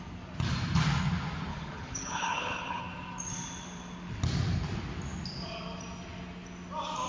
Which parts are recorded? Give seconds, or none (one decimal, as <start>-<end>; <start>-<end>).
0.0-1.5; 2.8-7.1